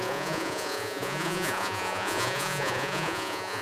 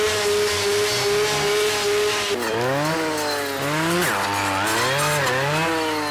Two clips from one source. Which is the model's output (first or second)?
first